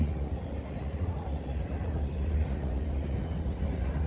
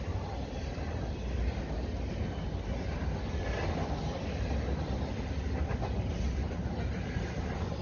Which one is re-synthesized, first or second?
first